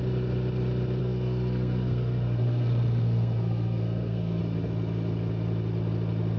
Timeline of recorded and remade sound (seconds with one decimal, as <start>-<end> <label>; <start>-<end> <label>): 0.0-1.0 recorded; 1.0-4.4 remade; 4.4-6.4 recorded